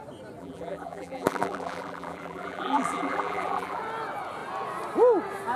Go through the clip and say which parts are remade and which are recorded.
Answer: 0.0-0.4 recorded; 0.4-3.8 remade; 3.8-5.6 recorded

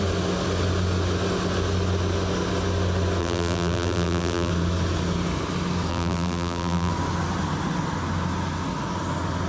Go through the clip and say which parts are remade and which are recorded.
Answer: 0.0-3.2 recorded; 3.2-4.5 remade; 4.5-5.9 recorded; 5.9-6.9 remade; 6.9-9.5 recorded

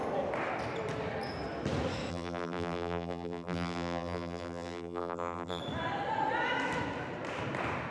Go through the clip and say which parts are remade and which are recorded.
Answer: 0.0-2.1 recorded; 2.1-5.6 remade; 5.6-7.9 recorded

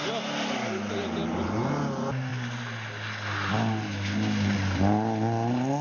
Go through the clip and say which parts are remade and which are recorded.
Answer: 0.0-5.8 recorded

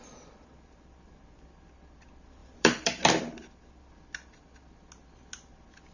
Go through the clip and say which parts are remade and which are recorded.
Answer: 0.0-2.4 recorded; 2.4-3.1 remade; 3.1-5.9 recorded

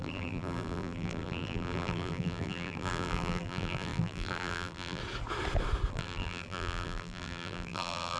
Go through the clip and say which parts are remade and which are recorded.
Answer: 0.0-5.0 remade; 5.0-5.9 recorded; 5.9-8.2 remade

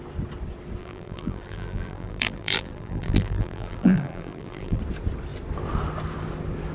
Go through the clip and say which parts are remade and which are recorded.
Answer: 0.0-0.8 recorded; 0.8-4.8 remade; 4.8-6.7 recorded

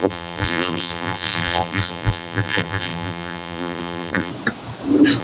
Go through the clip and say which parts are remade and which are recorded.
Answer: 0.0-4.3 remade; 4.3-5.2 recorded